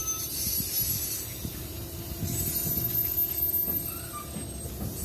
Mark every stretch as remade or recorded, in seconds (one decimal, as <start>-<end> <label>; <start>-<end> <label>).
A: 0.0-5.0 recorded